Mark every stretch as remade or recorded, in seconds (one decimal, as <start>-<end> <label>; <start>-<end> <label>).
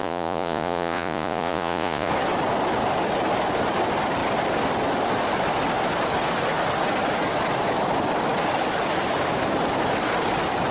0.0-2.1 remade; 2.1-10.7 recorded